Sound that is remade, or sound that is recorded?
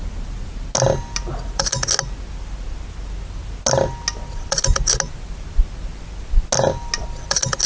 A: recorded